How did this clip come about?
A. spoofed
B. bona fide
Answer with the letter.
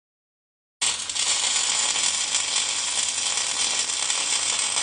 B